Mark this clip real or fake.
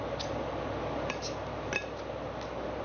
real